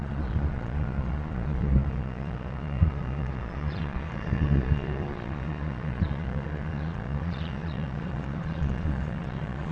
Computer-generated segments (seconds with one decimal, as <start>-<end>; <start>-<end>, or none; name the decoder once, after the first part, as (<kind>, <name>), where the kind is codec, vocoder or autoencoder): 0.0-9.7 (vocoder, Vocos)